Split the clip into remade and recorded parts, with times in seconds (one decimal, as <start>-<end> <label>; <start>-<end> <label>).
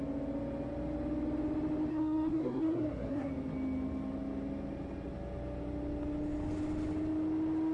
0.0-1.9 recorded; 1.9-3.3 remade; 3.3-7.7 recorded